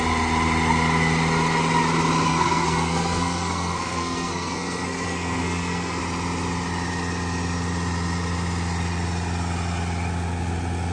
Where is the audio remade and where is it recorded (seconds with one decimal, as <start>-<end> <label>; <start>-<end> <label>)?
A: 0.0-2.3 recorded; 2.3-6.0 remade; 6.0-10.9 recorded